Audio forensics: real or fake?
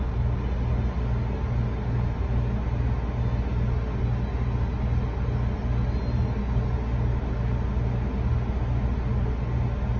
real